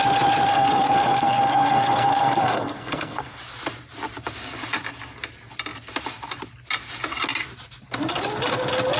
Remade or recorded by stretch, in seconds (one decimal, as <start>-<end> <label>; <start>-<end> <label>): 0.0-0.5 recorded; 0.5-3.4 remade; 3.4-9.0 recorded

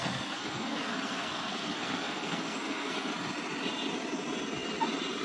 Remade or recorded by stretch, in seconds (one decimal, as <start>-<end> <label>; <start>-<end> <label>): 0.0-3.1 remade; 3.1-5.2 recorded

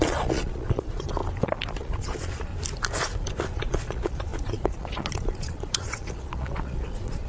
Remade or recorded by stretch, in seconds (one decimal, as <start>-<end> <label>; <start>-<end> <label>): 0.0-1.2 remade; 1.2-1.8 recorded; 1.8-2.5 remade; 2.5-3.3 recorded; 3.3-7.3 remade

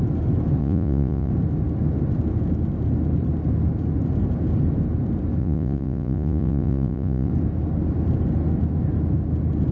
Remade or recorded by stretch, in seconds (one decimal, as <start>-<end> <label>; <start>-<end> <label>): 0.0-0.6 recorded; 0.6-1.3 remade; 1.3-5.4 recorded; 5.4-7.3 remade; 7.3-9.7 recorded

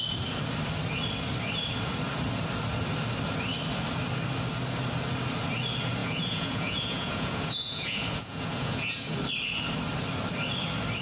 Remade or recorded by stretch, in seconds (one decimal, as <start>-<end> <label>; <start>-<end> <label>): 0.0-6.0 recorded; 6.0-9.1 remade; 9.1-11.0 recorded

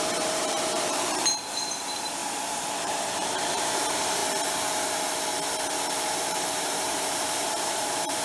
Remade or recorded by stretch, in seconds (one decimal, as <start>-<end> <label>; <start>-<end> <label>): 0.0-4.2 remade; 4.2-5.7 recorded; 5.7-8.2 remade

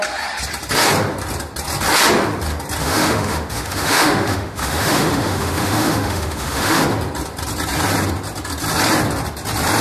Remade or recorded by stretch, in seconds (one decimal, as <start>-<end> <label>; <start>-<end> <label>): 0.0-2.8 recorded; 2.8-6.8 remade; 6.8-9.8 recorded

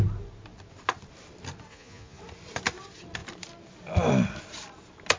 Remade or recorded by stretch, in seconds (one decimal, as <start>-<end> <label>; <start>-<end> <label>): 0.0-1.7 recorded; 1.7-2.2 remade; 2.2-5.2 recorded